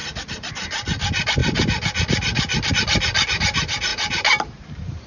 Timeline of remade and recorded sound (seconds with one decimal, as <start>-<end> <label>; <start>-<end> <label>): 0.0-3.9 recorded; 3.9-5.1 remade